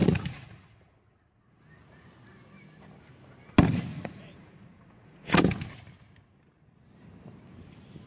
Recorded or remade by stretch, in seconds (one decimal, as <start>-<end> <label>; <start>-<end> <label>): 0.0-1.6 remade; 1.6-3.9 recorded; 3.9-5.4 remade; 5.4-8.1 recorded